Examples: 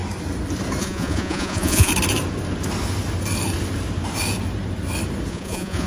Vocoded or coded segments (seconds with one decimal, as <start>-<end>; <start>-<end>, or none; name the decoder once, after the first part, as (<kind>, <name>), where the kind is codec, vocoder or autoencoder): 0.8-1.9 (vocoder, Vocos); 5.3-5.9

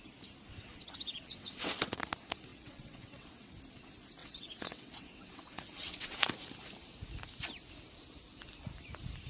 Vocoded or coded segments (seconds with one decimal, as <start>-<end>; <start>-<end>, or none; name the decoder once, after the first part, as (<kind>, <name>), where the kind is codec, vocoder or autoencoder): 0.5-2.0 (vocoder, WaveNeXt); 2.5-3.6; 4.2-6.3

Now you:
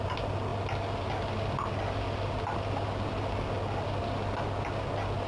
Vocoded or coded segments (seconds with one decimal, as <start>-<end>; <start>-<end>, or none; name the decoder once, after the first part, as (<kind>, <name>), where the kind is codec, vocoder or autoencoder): none

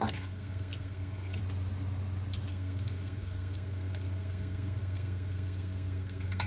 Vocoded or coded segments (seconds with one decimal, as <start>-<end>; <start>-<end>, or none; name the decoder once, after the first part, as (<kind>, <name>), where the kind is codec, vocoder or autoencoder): 0.0-1.4 (codec, SNAC); 2.5-6.5

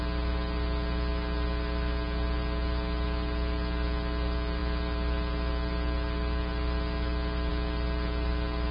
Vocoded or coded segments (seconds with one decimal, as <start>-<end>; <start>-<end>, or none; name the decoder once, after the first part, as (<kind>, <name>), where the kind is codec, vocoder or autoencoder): none